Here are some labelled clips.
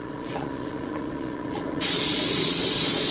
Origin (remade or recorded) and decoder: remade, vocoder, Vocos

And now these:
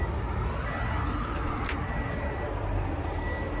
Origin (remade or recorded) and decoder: recorded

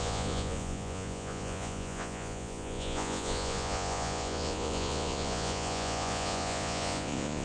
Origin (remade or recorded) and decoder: remade, vocoder, Vocos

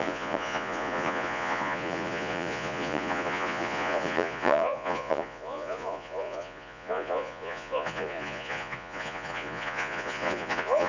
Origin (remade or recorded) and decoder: remade, vocoder, Vocos